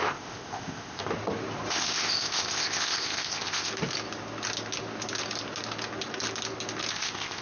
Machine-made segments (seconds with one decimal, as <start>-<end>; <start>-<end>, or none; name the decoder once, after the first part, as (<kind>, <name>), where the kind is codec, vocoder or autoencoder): 0.0-1.1 (codec, ZipCodec); 1.7-3.7; 6.9-7.4